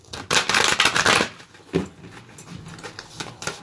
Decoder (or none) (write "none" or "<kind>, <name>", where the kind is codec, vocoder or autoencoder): none